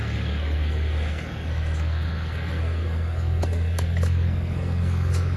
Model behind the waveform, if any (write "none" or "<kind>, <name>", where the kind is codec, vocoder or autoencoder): codec, SNAC